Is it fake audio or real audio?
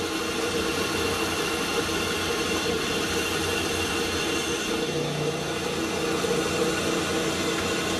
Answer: real